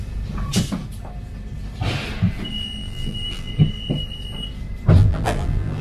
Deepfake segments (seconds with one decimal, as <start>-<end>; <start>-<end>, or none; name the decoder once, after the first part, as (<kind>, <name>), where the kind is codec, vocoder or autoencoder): 2.8-3.5 (vocoder, BigVGAN v2); 5.0-5.8

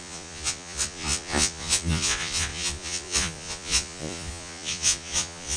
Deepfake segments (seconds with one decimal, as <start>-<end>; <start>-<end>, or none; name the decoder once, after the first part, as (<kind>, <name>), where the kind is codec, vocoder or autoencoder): 0.0-5.6 (vocoder, Vocos)

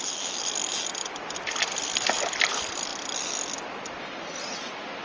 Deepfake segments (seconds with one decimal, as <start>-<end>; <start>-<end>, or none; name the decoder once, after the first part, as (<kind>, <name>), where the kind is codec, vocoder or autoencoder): none

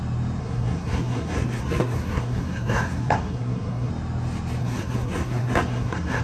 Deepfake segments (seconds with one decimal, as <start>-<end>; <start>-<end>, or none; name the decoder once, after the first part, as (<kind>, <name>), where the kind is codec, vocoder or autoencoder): 0.4-3.9 (codec, SNAC); 4.6-6.2

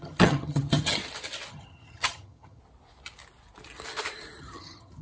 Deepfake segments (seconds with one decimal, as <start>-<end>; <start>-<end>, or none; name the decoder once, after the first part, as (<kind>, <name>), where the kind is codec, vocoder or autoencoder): 0.0-1.0 (vocoder, HiFi-GAN); 1.5-2.6; 4.4-5.0

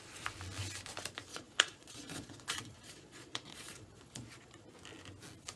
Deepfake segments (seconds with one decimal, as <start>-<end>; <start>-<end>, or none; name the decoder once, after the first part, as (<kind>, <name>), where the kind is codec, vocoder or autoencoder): 1.3-4.7 (vocoder, Vocos)